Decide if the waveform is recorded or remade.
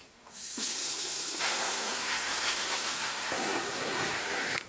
remade